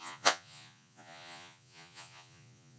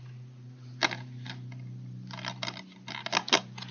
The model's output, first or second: first